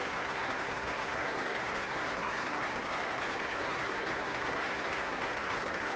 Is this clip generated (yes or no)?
yes